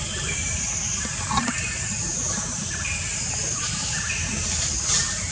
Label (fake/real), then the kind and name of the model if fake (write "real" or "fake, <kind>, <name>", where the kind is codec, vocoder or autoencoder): real